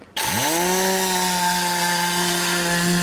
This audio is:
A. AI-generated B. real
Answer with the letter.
B